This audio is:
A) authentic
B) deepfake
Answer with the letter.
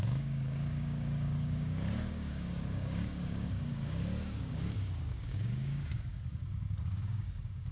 B